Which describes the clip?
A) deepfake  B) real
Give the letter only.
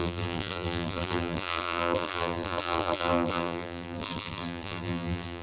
A